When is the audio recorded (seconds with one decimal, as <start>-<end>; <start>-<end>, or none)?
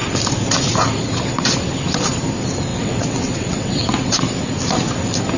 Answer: 0.0-2.7; 4.2-5.4